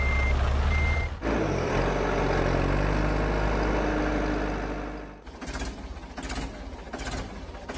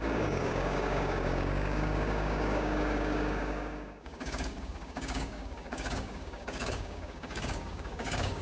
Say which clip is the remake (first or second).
second